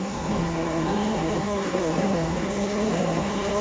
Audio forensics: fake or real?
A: fake